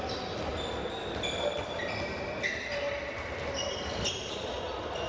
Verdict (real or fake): real